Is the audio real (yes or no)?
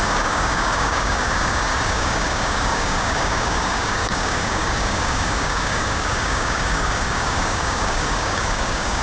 no